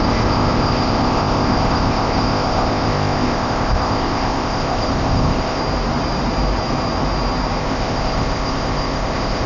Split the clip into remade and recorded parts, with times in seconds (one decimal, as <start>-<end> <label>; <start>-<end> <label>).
0.0-5.6 remade; 5.6-7.6 recorded; 7.6-9.5 remade